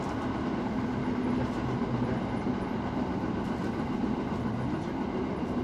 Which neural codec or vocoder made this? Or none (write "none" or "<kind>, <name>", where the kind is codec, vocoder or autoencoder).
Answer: none